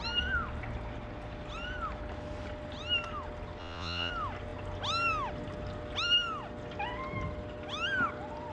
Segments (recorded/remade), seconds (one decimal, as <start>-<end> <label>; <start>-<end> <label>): 0.0-3.6 recorded; 3.6-4.1 remade; 4.1-8.5 recorded